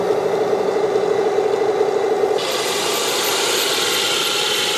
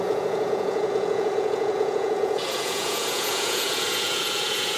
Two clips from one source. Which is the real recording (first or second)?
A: first